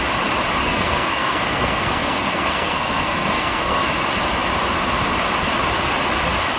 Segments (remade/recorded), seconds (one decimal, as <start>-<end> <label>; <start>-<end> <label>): 0.0-0.6 recorded; 0.6-3.9 remade; 3.9-6.6 recorded